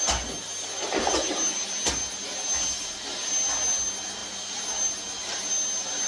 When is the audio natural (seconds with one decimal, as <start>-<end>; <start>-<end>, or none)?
0.0-6.1